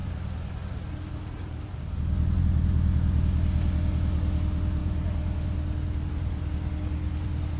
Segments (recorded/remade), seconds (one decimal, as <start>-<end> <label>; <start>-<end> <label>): 0.0-7.6 recorded